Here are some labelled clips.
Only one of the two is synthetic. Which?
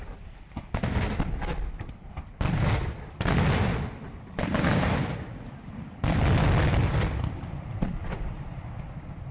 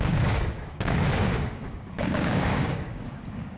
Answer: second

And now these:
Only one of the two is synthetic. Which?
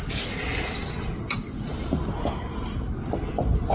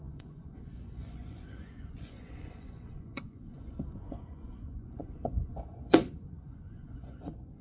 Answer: second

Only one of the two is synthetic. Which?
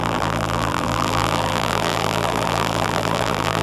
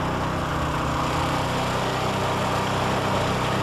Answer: first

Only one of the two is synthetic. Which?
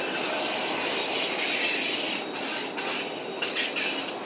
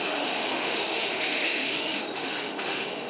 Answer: second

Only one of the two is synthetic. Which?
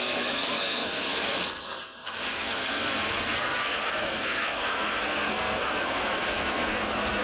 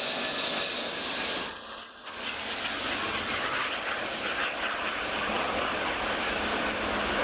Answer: first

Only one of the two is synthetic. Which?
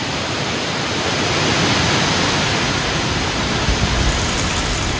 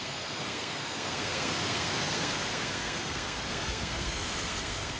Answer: second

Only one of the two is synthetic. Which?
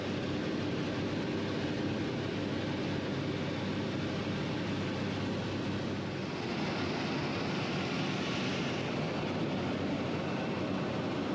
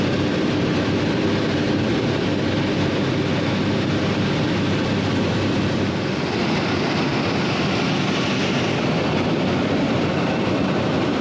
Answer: second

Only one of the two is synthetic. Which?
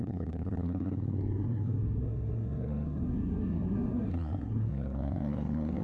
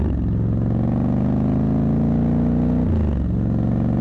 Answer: first